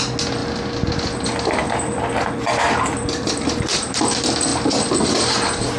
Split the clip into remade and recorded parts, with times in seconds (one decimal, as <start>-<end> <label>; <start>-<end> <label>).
0.0-1.6 recorded; 1.6-4.0 remade; 4.0-5.8 recorded

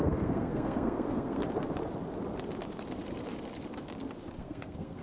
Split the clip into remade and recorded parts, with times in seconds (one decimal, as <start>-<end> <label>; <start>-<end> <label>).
0.0-1.4 remade; 1.4-4.4 recorded; 4.4-5.0 remade

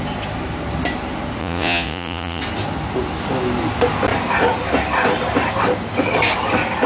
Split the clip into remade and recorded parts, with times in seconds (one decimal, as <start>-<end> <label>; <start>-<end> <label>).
0.0-1.4 recorded; 1.4-2.4 remade; 2.4-6.9 recorded